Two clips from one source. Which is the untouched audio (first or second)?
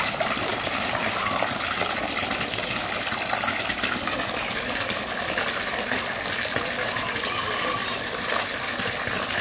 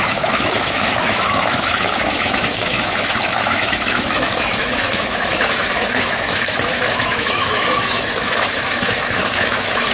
first